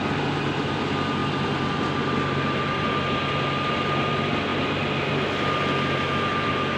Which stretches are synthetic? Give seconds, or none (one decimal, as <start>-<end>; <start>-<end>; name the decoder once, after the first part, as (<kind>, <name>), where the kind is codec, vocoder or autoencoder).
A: none